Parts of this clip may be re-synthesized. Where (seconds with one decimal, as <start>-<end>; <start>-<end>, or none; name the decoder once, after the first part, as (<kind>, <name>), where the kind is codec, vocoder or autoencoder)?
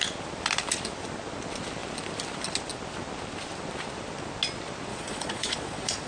4.9-6.1 (vocoder, Vocos)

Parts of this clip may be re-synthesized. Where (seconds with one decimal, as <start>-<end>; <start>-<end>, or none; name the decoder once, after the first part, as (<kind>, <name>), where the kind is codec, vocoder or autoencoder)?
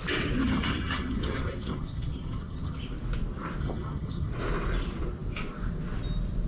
0.4-2.8 (vocoder, HiFi-GAN); 3.6-4.3